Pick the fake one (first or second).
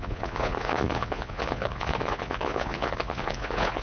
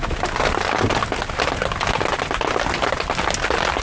first